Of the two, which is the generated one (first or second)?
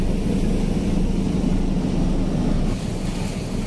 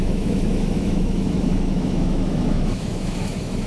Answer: second